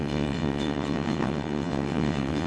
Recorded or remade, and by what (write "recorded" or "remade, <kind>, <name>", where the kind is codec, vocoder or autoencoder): remade, vocoder, WaveNeXt